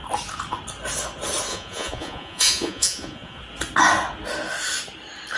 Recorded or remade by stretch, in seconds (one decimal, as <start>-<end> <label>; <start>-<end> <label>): 0.0-1.5 recorded; 1.5-3.4 remade; 3.4-5.4 recorded